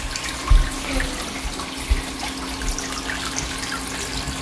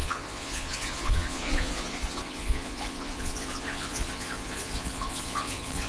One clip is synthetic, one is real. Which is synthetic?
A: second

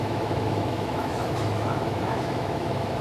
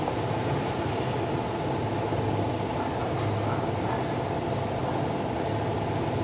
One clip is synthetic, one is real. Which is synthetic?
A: first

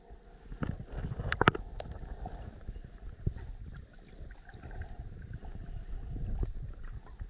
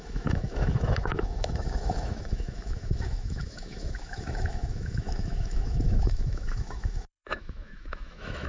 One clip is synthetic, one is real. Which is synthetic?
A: second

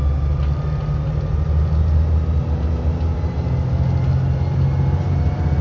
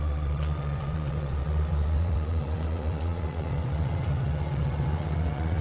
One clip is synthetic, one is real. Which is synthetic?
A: second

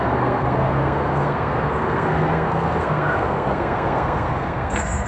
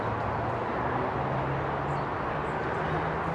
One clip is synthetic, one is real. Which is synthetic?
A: first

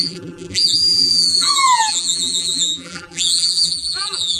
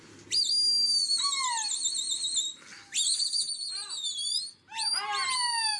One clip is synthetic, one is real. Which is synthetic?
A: first